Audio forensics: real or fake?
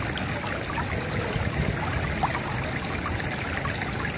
real